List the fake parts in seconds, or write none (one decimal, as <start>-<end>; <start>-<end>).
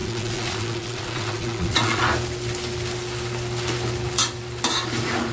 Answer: 0.0-2.0